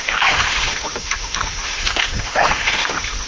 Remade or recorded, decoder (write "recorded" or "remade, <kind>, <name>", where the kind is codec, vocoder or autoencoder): remade, autoencoder, DAC-VAE